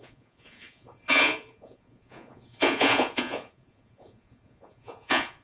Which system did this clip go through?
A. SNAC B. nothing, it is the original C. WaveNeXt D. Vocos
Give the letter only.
D